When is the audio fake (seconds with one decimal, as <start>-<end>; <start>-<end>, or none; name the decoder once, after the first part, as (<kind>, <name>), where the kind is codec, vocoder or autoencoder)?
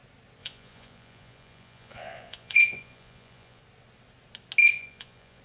0.4-3.6 (vocoder, Vocos); 4.6-5.4